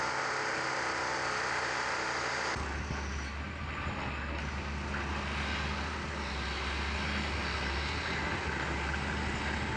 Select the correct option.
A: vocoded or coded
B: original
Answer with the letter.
B